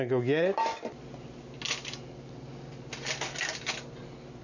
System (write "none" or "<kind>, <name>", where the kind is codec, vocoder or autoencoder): none